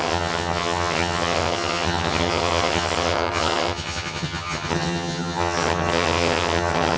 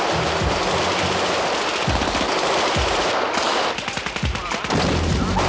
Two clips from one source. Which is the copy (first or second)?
first